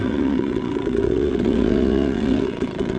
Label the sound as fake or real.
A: fake